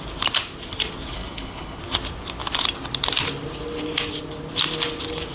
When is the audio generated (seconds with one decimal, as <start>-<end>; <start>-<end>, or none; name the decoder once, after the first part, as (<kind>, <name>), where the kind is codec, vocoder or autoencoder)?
1.1-1.8 (codec, HILCodec)